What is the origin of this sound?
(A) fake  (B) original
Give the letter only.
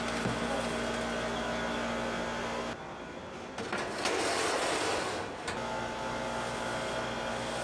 B